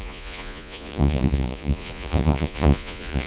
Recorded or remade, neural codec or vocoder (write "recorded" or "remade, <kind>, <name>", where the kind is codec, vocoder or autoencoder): remade, vocoder, Vocos